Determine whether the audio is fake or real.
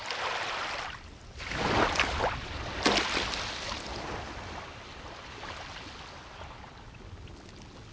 real